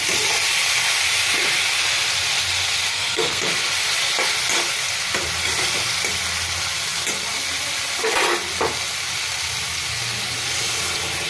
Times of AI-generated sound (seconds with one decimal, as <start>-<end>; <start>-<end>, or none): 2.9-3.4